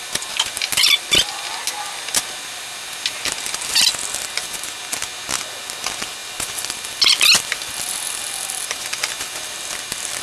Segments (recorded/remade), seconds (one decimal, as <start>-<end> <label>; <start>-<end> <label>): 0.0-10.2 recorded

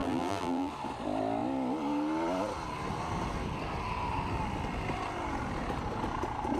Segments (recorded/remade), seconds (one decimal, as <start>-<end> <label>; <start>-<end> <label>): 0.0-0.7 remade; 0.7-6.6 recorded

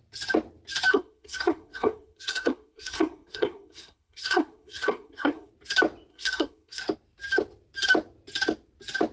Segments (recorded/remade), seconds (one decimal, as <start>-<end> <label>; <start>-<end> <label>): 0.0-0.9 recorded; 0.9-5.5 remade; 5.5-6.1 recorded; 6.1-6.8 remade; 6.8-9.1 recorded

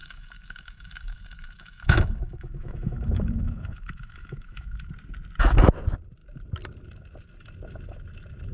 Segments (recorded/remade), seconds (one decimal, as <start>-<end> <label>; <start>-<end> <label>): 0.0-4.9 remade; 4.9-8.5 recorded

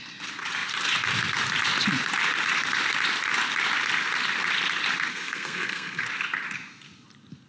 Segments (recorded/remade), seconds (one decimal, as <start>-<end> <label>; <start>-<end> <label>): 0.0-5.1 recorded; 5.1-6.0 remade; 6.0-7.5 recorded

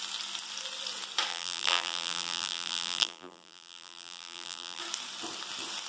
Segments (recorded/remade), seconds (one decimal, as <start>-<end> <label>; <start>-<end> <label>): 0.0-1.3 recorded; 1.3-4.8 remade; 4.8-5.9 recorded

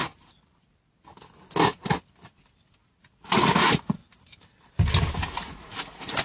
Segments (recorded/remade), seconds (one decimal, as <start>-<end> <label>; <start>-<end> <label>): 0.0-3.0 recorded; 3.0-4.0 remade; 4.0-5.3 recorded; 5.3-6.2 remade

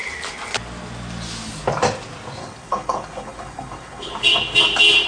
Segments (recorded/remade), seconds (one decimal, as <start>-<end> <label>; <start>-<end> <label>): 0.0-2.4 recorded; 2.4-4.1 remade; 4.1-5.1 recorded